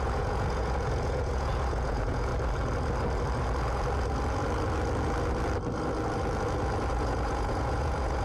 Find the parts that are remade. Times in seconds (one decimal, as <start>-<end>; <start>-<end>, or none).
0.0-2.3; 6.9-8.2